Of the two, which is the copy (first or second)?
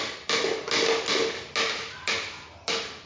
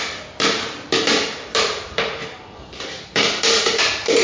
second